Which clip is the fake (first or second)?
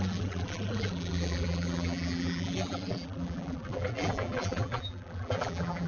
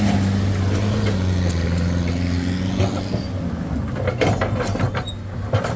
first